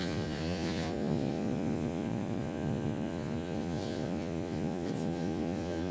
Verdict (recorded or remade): remade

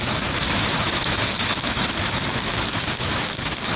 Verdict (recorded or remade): remade